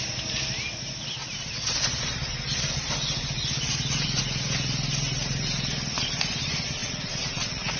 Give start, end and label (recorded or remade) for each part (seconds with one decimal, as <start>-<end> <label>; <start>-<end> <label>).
0.0-6.8 recorded; 6.8-7.8 remade